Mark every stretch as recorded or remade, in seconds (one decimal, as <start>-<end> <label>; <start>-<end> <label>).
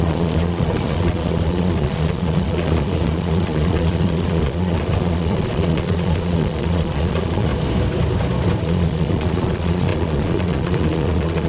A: 0.0-7.5 remade; 7.5-8.6 recorded; 8.6-11.5 remade